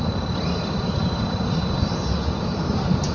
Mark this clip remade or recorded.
recorded